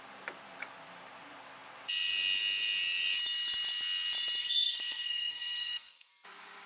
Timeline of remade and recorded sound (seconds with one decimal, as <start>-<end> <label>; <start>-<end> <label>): 0.0-4.4 recorded; 4.4-6.1 remade; 6.1-6.7 recorded